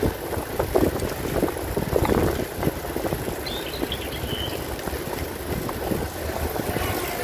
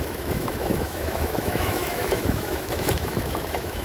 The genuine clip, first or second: first